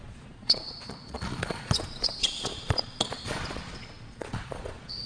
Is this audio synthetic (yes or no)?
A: yes